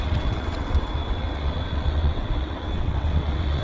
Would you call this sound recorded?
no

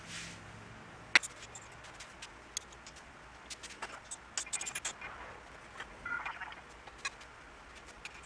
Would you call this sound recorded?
yes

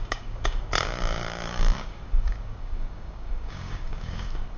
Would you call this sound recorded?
no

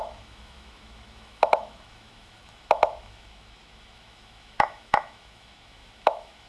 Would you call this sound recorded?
no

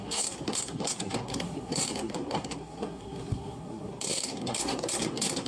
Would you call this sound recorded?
no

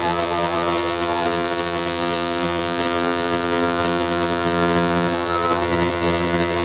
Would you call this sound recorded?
no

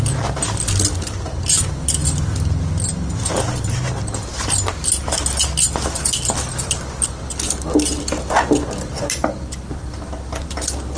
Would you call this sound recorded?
yes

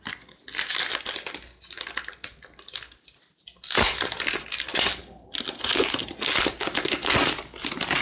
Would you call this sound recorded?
yes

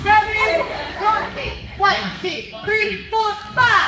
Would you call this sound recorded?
no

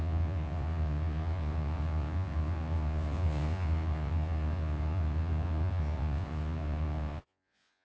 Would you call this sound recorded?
no